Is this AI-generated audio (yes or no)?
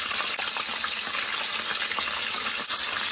no